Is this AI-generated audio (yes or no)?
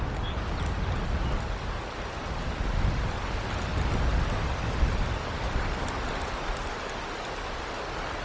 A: no